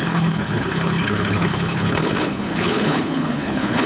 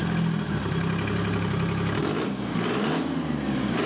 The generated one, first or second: first